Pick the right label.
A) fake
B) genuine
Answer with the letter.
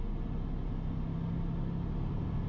B